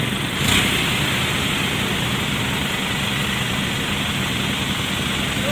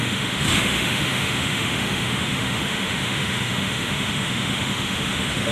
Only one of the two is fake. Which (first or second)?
second